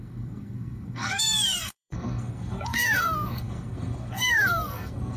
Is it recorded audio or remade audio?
remade